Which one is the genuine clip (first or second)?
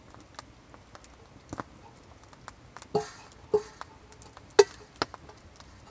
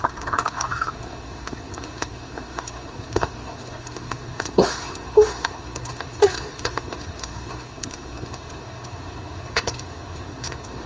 first